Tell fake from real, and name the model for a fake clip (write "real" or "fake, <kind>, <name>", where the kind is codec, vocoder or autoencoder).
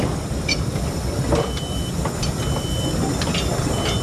real